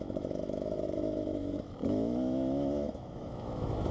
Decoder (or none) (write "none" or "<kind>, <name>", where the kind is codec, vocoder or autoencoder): autoencoder, DAC-VAE